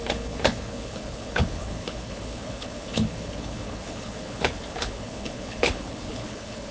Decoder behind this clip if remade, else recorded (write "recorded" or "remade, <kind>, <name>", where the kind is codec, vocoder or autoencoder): remade, codec, HILCodec